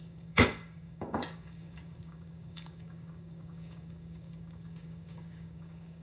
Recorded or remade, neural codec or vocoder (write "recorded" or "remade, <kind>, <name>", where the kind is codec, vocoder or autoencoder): remade, codec, DAC